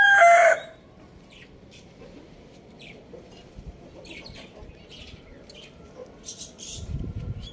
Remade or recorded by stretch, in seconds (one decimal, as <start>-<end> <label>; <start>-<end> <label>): 0.0-6.0 remade; 6.0-6.5 recorded; 6.5-7.5 remade